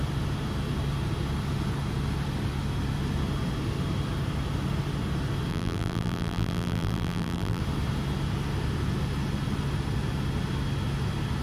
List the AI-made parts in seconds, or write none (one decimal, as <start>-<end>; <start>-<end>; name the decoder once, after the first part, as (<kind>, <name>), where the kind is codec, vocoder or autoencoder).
5.5-7.6 (vocoder, BigVGAN v2)